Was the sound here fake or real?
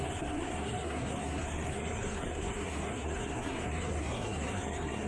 fake